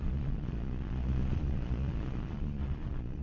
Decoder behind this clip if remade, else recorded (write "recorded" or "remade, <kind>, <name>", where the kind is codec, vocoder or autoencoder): remade, vocoder, Vocos